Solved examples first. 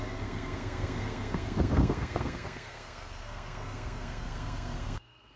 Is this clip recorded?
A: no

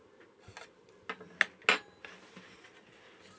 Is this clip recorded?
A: yes